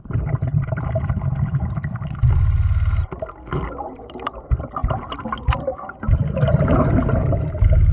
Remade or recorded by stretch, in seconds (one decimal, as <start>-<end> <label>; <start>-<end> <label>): 0.0-7.9 recorded